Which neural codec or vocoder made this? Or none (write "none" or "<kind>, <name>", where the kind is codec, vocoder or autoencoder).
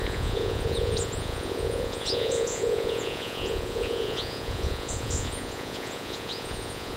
vocoder, Vocos